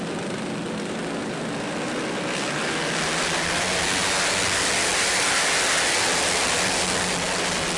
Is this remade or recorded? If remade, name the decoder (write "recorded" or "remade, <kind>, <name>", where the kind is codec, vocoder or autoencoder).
recorded